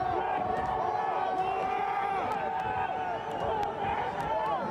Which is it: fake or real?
real